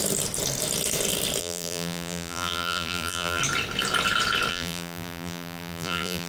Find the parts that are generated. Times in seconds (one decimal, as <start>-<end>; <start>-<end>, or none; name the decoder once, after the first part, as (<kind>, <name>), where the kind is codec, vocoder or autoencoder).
1.4-3.4 (vocoder, BigVGAN v2); 4.5-6.3